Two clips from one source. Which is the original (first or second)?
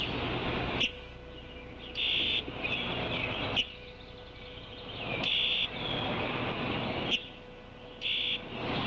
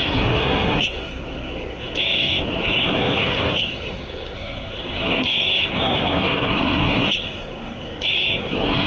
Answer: first